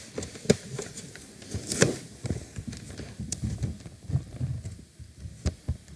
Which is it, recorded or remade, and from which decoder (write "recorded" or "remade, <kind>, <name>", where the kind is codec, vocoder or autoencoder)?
remade, vocoder, BigVGAN v2